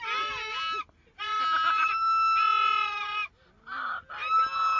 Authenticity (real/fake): real